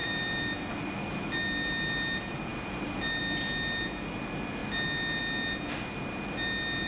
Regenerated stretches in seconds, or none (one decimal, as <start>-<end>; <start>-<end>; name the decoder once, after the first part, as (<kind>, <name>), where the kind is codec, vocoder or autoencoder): 0.0-0.9 (vocoder, BigVGAN v2)